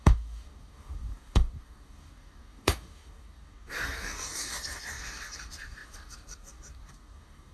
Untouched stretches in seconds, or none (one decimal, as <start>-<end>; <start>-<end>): none

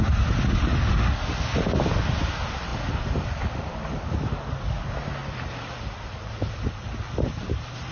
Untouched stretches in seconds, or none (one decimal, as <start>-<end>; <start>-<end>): 0.0-5.2

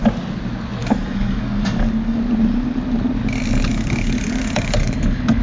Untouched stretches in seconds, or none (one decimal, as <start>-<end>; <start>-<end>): 0.0-0.8; 2.2-3.7

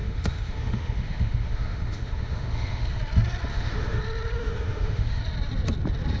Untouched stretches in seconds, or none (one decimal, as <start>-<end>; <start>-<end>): 3.0-3.5; 4.0-4.4; 5.2-6.2

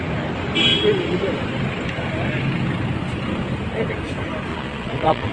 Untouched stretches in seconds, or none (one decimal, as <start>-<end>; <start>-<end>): 0.0-4.5

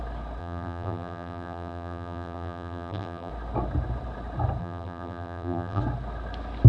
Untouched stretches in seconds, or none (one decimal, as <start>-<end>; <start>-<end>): 0.0-0.4; 3.3-4.6; 5.8-6.7

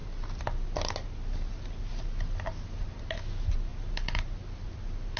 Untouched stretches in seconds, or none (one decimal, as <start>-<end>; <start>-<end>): 0.0-5.2

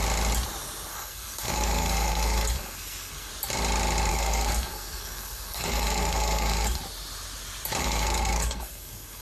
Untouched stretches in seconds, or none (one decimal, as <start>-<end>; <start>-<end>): 0.0-0.9; 3.3-4.1; 6.8-7.8